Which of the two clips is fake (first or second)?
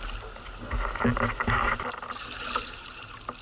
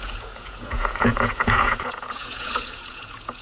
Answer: second